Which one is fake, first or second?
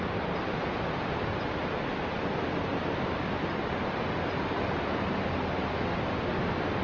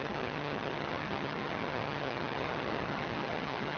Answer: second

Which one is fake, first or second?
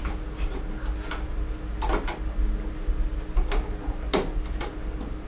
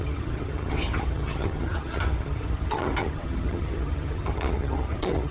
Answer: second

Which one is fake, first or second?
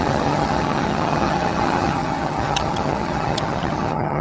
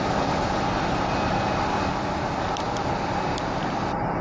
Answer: first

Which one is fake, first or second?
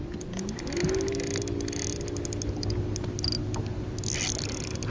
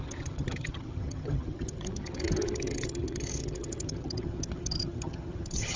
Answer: second